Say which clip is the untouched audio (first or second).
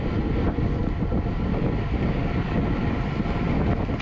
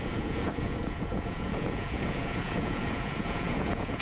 first